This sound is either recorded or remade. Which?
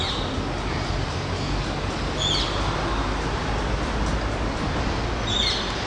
recorded